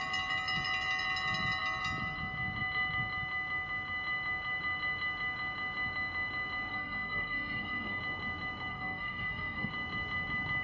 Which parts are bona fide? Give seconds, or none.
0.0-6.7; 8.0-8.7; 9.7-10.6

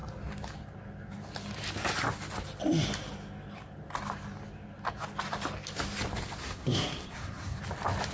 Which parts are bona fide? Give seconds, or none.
0.0-6.4; 7.6-8.1